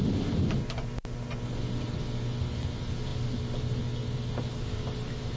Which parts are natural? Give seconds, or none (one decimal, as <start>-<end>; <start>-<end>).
0.0-5.4